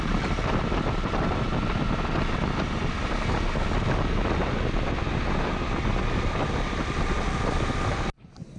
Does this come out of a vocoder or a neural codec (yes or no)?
no